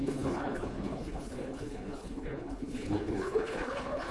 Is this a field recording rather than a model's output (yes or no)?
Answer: no